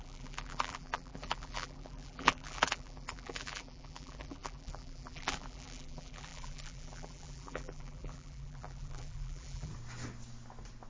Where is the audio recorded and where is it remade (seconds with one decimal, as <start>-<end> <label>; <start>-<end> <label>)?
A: 0.0-9.7 remade; 9.7-10.9 recorded

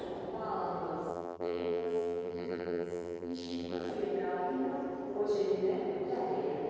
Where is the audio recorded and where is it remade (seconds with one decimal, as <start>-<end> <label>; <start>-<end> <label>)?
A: 0.0-1.1 recorded; 1.1-3.9 remade; 3.9-6.7 recorded

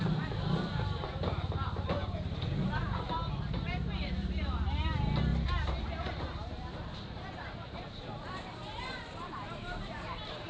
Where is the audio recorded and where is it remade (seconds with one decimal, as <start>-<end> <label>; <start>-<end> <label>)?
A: 0.0-5.3 remade; 5.3-6.7 recorded; 6.7-10.5 remade

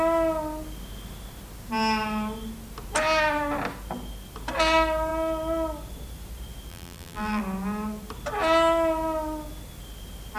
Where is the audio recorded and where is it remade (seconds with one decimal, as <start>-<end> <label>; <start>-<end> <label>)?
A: 0.0-6.7 recorded; 6.7-7.4 remade; 7.4-10.4 recorded

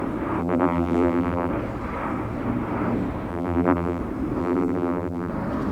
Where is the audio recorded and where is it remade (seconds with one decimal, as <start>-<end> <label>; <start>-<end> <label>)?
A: 0.0-0.4 recorded; 0.4-1.5 remade; 1.5-3.3 recorded; 3.3-4.0 remade; 4.0-4.4 recorded; 4.4-5.3 remade; 5.3-5.7 recorded

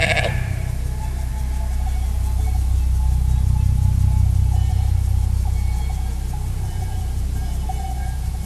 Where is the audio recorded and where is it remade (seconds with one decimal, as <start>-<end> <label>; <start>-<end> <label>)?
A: 0.0-1.3 remade; 1.3-4.7 recorded; 4.7-8.5 remade

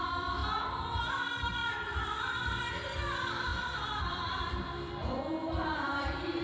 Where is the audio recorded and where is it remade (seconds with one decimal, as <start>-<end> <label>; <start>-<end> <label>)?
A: 0.0-0.4 remade; 0.4-1.1 recorded; 1.1-6.4 remade

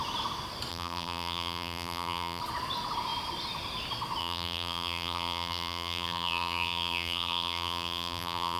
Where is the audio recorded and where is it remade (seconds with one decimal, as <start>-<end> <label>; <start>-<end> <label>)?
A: 0.0-0.7 recorded; 0.7-2.4 remade; 2.4-4.2 recorded; 4.2-8.6 remade